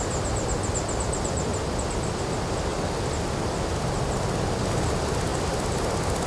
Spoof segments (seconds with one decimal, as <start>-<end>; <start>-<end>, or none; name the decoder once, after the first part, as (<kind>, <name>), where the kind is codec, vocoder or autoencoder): none